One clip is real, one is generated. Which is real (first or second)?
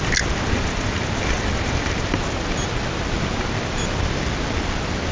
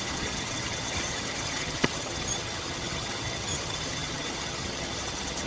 first